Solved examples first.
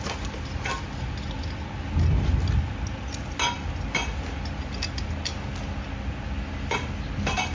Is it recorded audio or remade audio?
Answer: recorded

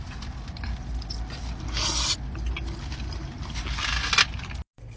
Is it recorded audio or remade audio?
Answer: recorded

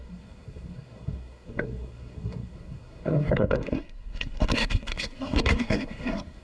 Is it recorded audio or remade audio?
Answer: remade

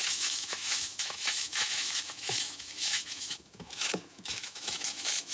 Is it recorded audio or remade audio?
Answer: remade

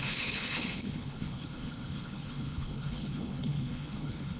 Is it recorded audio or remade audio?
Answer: remade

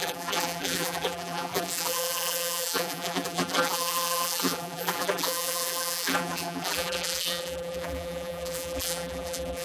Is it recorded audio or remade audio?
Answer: remade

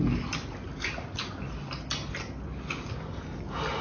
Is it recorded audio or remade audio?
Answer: recorded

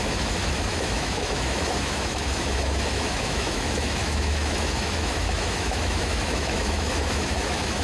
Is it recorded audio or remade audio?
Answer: remade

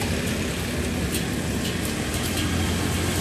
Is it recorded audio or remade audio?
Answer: recorded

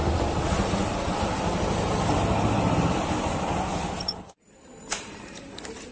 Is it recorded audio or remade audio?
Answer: recorded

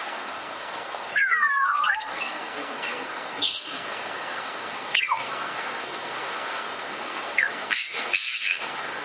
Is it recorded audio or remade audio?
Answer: remade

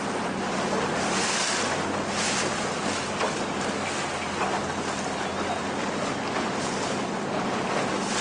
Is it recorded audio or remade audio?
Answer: recorded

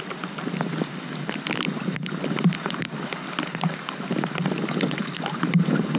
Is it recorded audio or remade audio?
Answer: recorded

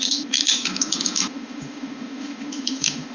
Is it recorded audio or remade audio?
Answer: remade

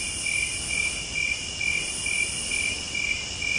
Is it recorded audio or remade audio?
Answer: recorded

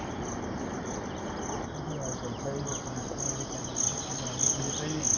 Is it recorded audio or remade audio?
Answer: recorded